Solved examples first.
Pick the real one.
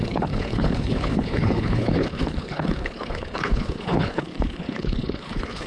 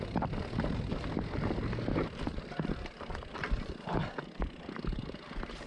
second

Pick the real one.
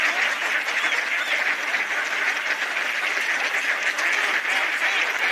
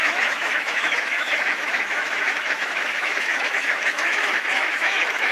first